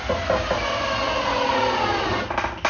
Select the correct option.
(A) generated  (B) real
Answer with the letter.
B